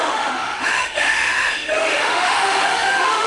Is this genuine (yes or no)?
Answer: no